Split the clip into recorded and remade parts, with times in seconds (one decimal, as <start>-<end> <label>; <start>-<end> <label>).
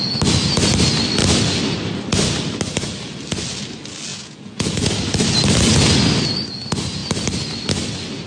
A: 0.0-4.1 recorded; 4.1-4.9 remade; 4.9-8.3 recorded